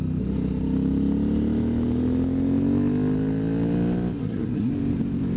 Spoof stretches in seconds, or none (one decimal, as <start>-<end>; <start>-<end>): 4.2-4.7